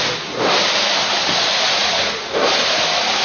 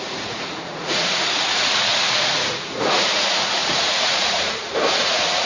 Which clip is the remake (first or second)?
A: second